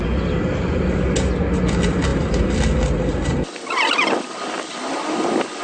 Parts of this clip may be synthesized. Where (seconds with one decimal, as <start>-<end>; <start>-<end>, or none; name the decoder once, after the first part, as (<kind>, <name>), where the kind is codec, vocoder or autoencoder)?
none